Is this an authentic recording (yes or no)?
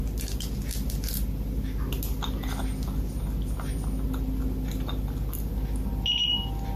yes